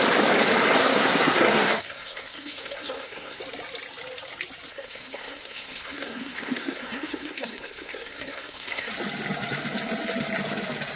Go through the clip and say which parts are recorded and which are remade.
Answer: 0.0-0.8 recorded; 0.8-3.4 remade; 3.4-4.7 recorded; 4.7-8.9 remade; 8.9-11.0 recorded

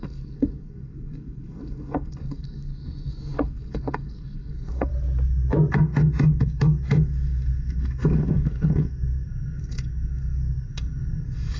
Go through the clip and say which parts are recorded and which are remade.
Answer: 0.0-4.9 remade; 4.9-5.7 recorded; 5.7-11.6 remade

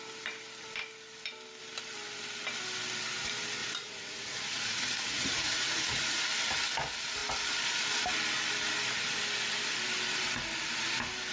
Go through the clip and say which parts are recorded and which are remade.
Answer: 0.0-3.6 recorded; 3.6-6.3 remade; 6.3-11.3 recorded

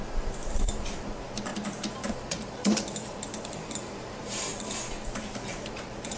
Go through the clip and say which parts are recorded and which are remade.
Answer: 0.0-1.5 remade; 1.5-2.1 recorded; 2.1-4.5 remade; 4.5-5.2 recorded; 5.2-6.2 remade

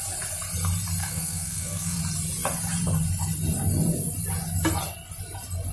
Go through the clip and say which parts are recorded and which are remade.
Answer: 0.0-1.0 recorded; 1.0-2.0 remade; 2.0-5.7 recorded